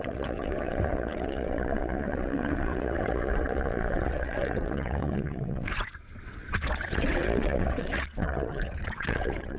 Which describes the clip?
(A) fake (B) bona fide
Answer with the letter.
A